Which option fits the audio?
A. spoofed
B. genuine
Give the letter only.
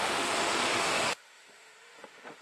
A